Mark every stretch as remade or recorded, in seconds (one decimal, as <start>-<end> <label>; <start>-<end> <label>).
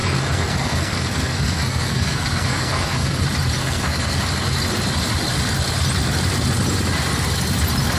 0.0-3.2 remade; 3.2-3.6 recorded; 3.6-4.2 remade; 4.2-8.0 recorded